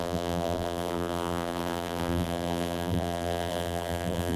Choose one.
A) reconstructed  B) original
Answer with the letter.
A